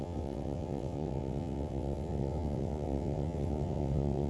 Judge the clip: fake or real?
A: fake